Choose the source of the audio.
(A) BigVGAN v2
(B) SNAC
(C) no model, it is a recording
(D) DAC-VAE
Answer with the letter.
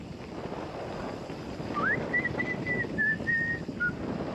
C